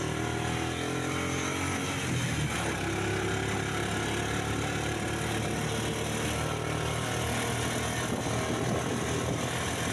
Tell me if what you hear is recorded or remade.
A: recorded